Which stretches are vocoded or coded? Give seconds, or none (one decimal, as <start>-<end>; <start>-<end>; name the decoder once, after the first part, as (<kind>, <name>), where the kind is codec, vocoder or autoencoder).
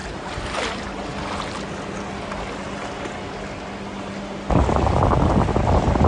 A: none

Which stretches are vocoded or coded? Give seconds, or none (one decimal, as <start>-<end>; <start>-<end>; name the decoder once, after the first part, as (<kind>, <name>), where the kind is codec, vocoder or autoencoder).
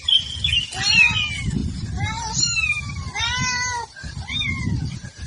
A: none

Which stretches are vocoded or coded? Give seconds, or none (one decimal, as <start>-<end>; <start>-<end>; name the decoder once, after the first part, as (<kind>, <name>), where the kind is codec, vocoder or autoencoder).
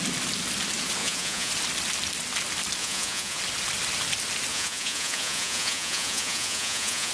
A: 1.0-1.5 (vocoder, Vocos); 2.8-3.4; 4.5-7.1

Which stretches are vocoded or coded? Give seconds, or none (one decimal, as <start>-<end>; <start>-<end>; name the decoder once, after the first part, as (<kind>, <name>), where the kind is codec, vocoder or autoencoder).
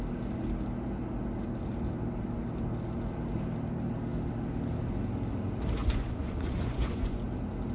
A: 5.8-7.2 (vocoder, Vocos)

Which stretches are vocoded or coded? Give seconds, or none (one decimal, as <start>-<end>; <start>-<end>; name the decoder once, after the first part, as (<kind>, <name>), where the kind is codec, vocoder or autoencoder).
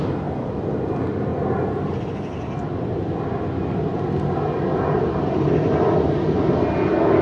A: none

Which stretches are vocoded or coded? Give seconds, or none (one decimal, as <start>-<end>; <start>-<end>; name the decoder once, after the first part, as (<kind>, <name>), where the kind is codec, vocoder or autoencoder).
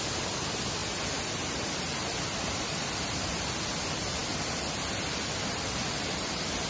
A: none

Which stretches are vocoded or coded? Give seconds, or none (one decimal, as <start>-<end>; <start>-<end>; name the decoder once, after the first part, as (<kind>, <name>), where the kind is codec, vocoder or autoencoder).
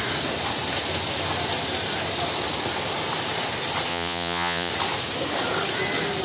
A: 3.9-4.7 (vocoder, Vocos)